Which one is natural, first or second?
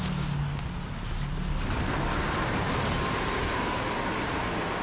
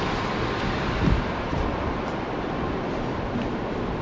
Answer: first